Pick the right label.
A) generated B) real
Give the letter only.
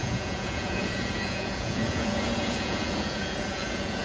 A